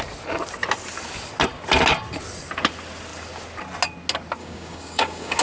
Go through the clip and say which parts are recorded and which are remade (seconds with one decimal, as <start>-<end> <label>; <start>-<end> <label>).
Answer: 0.0-4.4 recorded; 4.4-5.4 remade